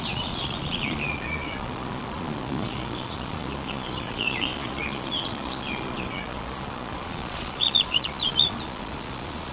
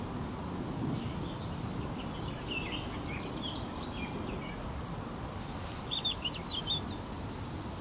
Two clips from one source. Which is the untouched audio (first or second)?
second